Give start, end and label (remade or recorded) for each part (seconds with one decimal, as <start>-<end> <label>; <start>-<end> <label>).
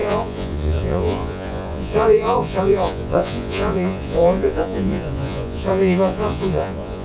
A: 0.0-7.0 remade